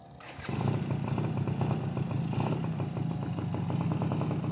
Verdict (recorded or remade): recorded